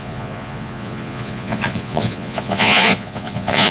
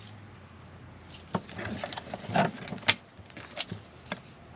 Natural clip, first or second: second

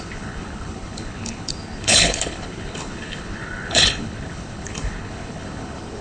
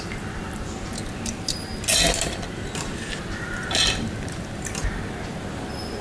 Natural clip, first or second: second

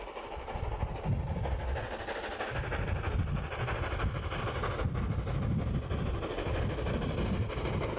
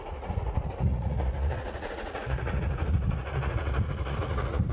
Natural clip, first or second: first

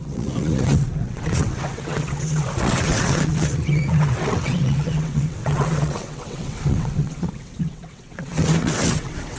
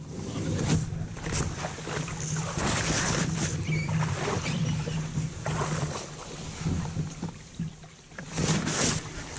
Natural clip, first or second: second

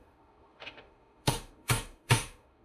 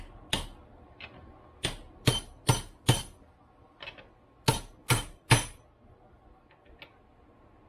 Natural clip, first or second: second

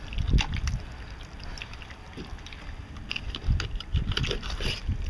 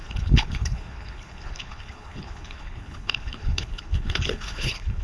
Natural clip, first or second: first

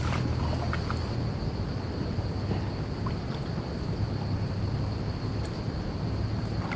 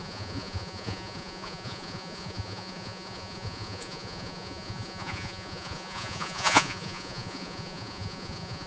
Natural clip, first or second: first